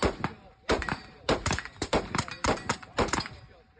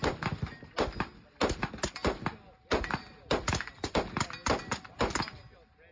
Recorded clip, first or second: second